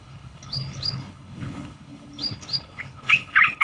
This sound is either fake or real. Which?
fake